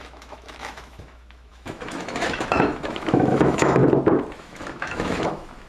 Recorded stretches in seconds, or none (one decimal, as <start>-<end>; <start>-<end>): 3.8-4.4